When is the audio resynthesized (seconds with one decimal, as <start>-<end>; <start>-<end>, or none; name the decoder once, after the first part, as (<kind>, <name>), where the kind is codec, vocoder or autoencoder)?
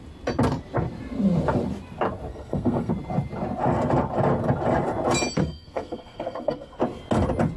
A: 2.3-2.9 (codec, SNAC); 5.4-6.8